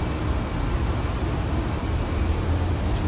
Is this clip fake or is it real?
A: real